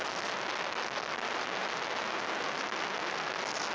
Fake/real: real